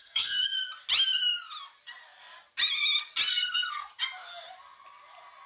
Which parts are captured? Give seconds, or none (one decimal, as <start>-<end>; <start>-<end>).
0.6-3.3; 3.9-5.5